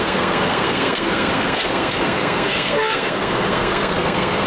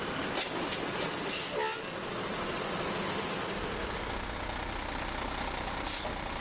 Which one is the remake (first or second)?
first